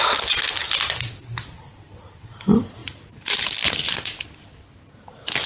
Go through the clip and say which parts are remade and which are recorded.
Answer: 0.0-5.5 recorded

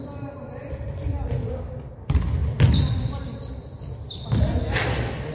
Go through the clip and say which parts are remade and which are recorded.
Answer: 0.0-5.3 recorded